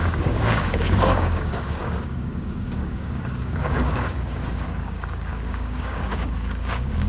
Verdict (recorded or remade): remade